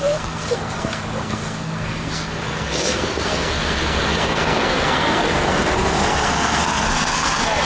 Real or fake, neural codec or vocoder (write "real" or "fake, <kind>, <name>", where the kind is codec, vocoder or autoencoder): fake, codec, SNAC